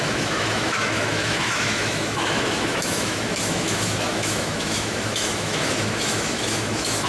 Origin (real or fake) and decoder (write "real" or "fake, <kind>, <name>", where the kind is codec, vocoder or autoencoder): fake, autoencoder, DAC-VAE